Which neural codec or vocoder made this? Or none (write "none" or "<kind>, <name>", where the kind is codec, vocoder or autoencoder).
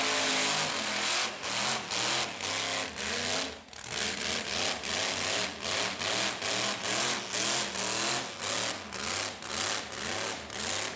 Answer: none